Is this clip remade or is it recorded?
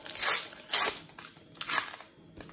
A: recorded